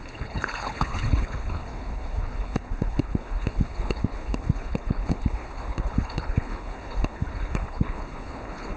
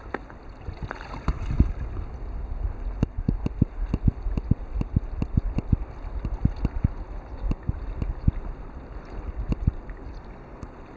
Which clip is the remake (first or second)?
first